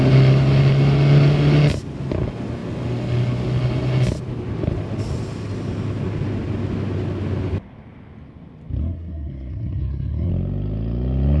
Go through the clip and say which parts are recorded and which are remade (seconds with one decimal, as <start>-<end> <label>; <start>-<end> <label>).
0.0-8.8 recorded; 8.8-10.3 remade; 10.3-11.4 recorded